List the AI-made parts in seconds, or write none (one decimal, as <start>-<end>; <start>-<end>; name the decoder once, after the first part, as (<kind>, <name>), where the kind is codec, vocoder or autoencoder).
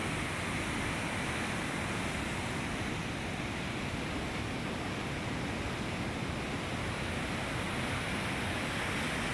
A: none